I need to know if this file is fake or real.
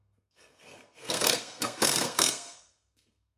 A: fake